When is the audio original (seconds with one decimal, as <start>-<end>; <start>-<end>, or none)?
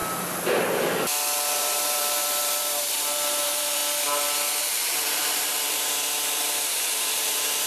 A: 0.0-1.6; 3.8-4.6